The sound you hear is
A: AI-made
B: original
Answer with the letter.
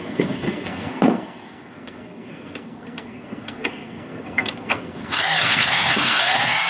A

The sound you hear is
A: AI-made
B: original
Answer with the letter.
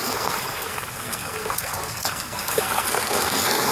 A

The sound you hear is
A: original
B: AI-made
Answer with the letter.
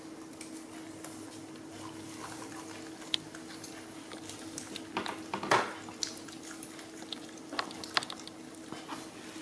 A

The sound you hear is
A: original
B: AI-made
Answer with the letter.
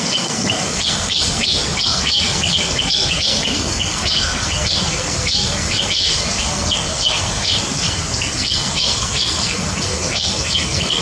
B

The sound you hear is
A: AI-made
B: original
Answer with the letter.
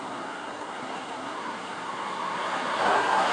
A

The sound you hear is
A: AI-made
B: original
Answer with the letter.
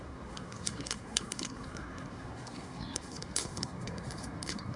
A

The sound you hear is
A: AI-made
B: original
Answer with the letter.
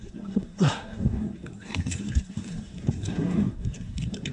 A